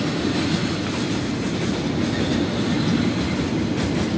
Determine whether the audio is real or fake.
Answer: real